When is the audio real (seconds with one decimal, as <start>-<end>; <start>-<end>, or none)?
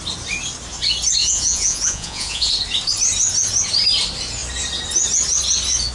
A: 0.0-1.2; 2.5-5.9